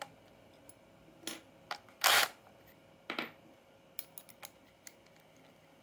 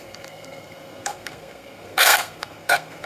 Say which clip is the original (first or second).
first